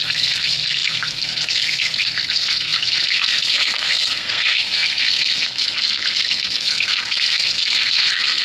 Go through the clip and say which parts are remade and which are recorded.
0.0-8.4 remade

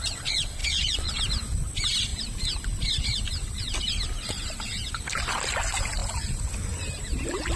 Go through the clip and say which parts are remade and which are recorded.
0.0-0.6 recorded; 0.6-1.2 remade; 1.2-7.6 recorded

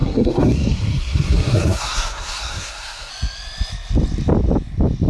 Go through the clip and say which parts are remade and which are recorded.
0.0-3.1 remade; 3.1-5.1 recorded

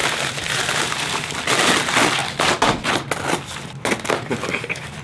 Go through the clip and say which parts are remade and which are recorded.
0.0-1.3 remade; 1.3-5.0 recorded

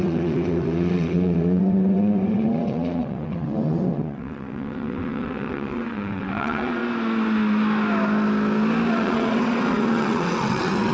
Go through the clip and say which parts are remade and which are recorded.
0.0-6.8 remade; 6.8-8.9 recorded; 8.9-10.9 remade